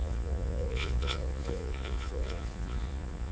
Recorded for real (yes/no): no